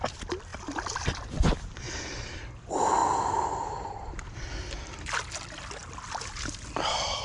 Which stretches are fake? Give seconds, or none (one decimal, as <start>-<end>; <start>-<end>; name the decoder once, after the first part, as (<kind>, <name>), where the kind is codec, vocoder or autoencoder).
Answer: none